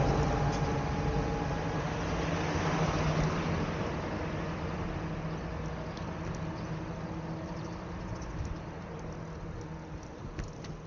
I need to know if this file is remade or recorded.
recorded